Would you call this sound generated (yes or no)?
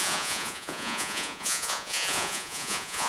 yes